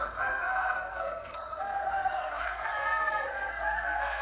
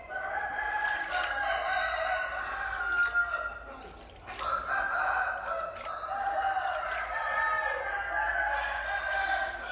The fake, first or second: first